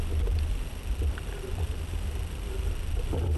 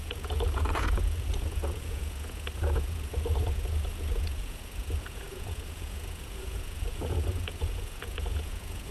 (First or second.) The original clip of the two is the first